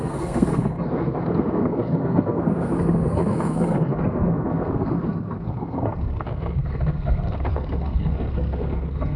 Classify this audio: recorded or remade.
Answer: remade